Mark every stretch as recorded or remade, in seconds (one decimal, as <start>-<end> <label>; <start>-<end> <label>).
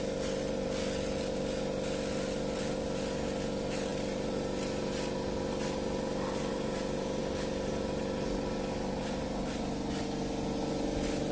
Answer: 0.0-11.3 recorded